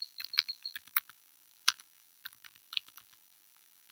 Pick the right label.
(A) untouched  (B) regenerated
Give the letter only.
B